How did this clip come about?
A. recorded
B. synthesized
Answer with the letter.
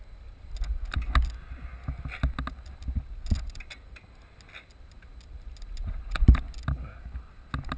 A